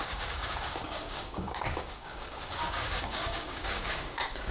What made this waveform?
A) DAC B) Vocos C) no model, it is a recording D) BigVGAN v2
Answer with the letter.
A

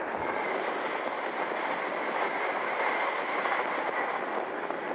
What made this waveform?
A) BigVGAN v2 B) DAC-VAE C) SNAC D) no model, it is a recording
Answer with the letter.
D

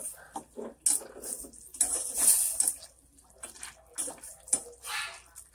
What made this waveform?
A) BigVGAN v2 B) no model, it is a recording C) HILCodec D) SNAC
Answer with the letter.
B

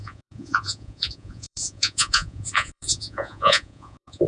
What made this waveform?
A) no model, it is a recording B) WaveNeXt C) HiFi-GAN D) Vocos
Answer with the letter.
D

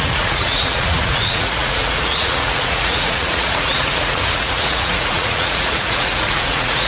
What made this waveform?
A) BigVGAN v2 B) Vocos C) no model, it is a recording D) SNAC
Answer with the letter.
B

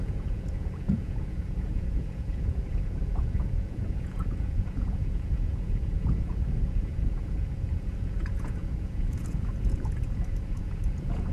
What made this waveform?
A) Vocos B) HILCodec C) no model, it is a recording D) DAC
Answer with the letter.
A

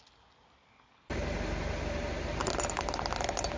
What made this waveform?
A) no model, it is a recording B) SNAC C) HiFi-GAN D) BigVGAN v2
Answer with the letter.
A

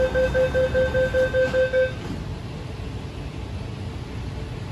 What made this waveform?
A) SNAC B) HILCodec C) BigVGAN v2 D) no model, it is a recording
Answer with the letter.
D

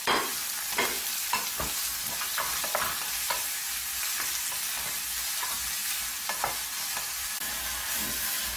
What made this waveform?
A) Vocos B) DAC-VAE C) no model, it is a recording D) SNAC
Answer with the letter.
C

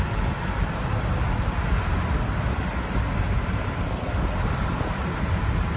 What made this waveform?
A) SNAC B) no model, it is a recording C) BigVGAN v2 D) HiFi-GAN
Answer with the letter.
B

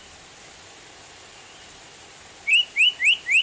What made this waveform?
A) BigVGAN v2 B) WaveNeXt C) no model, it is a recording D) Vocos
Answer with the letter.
C